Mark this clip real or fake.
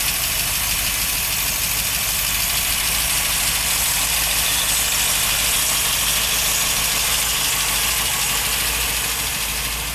real